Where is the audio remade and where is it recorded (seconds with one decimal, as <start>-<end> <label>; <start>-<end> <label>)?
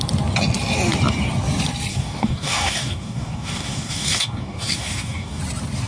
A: 0.0-1.9 recorded; 1.9-5.4 remade; 5.4-5.9 recorded